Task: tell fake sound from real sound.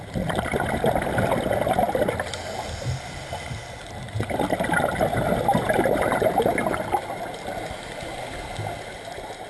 real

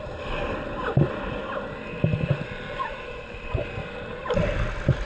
real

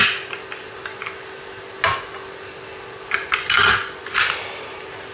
real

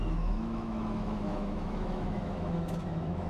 fake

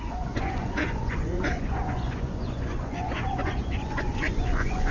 fake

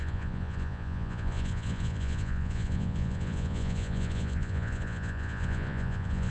fake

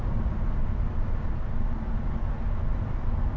real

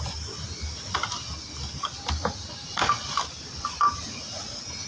real